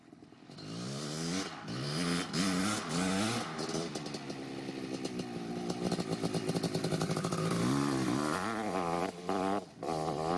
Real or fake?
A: real